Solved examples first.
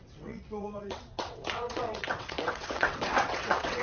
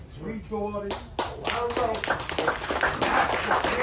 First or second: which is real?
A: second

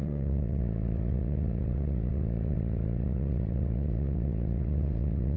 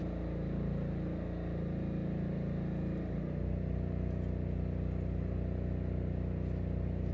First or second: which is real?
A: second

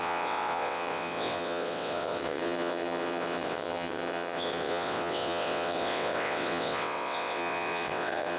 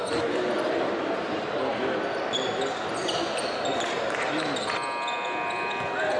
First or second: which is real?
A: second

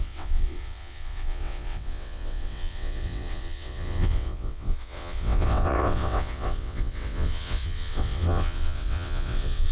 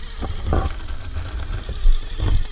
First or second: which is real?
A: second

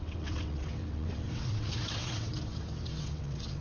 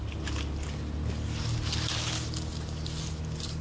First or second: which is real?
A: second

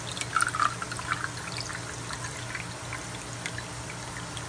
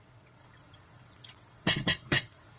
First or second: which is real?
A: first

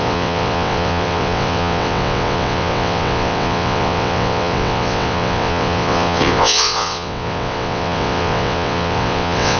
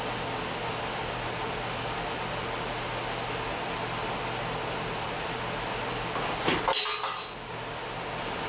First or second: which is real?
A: second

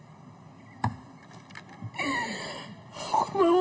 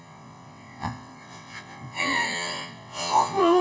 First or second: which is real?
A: first